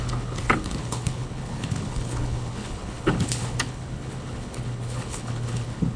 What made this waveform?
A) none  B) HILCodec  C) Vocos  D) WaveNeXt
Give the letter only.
B